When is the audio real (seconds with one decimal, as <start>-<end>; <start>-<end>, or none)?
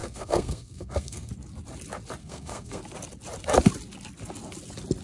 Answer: 1.3-2.2; 2.8-5.0